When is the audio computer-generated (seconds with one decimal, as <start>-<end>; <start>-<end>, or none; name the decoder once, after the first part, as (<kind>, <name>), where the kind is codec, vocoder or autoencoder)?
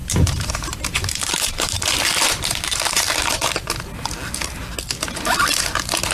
0.0-3.7 (vocoder, BigVGAN v2)